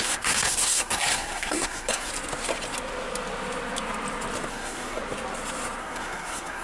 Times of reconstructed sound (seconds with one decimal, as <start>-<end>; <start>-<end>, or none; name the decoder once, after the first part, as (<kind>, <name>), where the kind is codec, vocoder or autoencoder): 0.0-2.1 (codec, SNAC); 4.5-5.0; 5.8-6.6